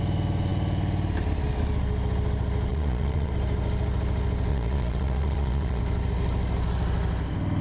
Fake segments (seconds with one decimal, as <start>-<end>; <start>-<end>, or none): 2.7-3.3; 4.5-5.8